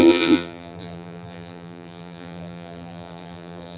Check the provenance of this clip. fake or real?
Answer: fake